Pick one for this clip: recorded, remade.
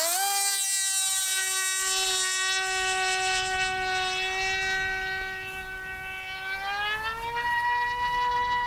recorded